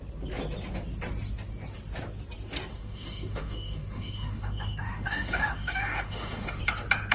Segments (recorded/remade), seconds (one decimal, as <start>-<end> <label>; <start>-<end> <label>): 0.0-2.7 recorded; 2.7-6.6 remade; 6.6-7.1 recorded